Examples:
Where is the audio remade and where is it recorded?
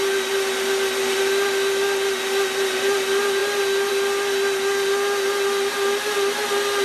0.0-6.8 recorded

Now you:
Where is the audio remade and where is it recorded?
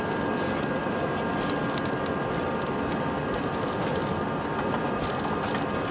0.0-0.8 recorded; 0.8-1.6 remade; 1.6-5.9 recorded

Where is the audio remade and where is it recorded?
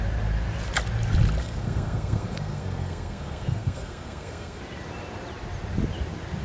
0.0-1.4 recorded; 1.4-4.6 remade; 4.6-6.4 recorded